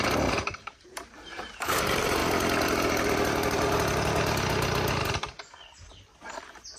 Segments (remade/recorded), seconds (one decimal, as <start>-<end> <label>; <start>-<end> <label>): 0.0-2.2 remade; 2.2-6.3 recorded; 6.3-6.8 remade